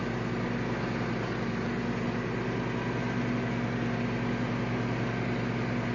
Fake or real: real